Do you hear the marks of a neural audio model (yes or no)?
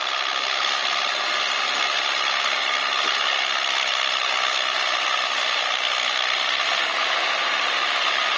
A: no